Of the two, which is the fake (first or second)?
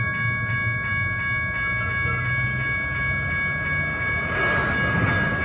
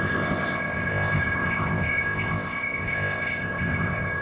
second